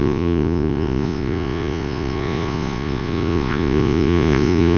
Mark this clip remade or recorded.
remade